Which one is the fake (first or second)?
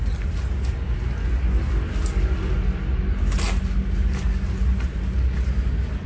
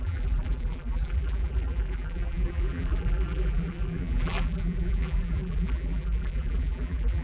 second